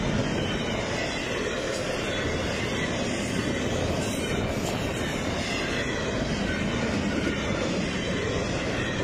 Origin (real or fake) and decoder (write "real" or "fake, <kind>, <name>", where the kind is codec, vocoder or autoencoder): real